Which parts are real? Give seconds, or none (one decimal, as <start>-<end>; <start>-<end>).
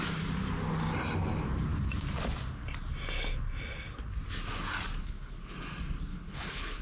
0.0-5.0; 5.5-6.1